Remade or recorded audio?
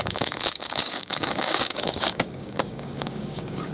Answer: remade